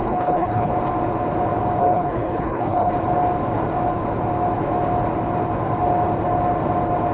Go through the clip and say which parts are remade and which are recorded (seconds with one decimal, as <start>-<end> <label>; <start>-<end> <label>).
0.0-0.7 remade; 0.7-1.8 recorded; 1.8-2.9 remade; 2.9-7.1 recorded